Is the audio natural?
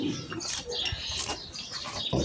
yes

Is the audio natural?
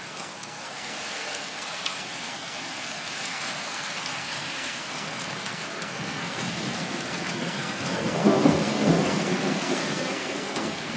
no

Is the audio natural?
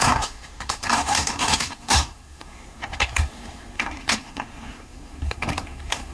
no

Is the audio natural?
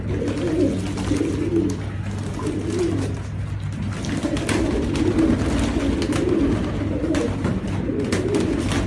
yes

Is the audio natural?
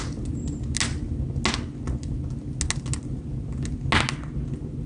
yes